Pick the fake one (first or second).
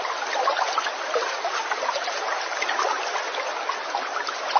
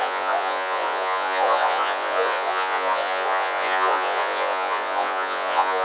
second